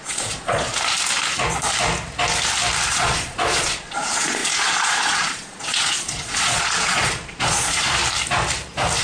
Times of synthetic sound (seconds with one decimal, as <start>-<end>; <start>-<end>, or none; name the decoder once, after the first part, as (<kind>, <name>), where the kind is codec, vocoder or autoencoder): 0.0-0.7 (vocoder, Vocos); 2.9-8.0